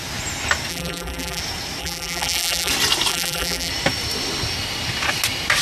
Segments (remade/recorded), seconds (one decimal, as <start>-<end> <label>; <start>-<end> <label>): 0.0-0.7 recorded; 0.7-1.4 remade; 1.4-1.8 recorded; 1.8-2.7 remade; 2.7-3.1 recorded; 3.1-3.7 remade; 3.7-5.6 recorded